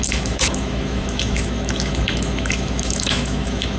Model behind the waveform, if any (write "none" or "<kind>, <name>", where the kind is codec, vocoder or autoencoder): autoencoder, DAC-VAE